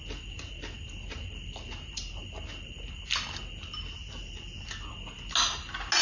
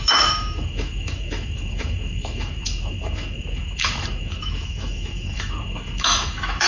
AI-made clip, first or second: second